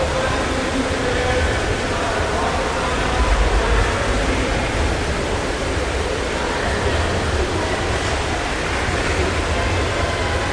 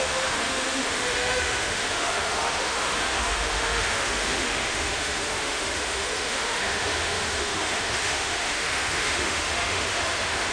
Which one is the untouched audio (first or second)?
first